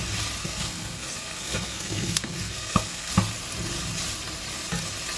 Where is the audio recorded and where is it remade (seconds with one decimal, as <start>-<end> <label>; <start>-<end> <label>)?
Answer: 0.0-0.4 recorded; 0.4-3.1 remade; 3.1-5.2 recorded